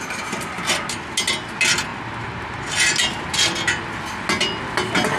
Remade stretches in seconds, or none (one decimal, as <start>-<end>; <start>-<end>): none